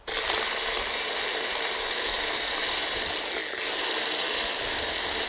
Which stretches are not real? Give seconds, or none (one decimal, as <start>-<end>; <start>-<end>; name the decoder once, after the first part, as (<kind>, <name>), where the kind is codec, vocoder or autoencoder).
none